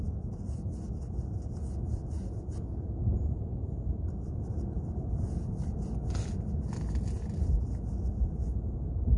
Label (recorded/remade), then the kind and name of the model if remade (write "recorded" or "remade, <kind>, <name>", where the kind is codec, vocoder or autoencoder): recorded